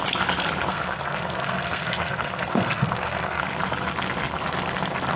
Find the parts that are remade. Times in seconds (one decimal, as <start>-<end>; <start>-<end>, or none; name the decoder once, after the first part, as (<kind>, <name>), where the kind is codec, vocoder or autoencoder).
0.7-3.4 (codec, SNAC)